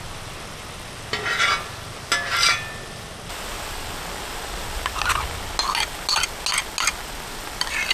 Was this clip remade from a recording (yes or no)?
no